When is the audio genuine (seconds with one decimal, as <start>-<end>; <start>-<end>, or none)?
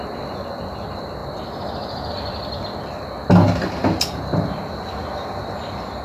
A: 0.0-6.0